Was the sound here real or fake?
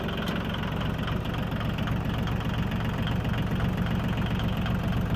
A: real